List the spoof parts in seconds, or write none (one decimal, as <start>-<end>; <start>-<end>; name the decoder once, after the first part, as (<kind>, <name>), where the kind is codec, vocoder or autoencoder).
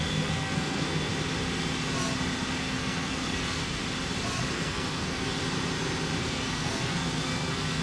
0.0-1.1 (codec, SNAC); 2.6-3.8; 4.5-5.4; 6.2-7.8